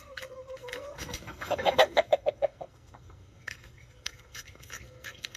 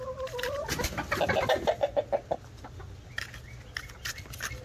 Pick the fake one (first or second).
first